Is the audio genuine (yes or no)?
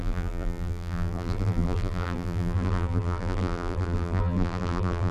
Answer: no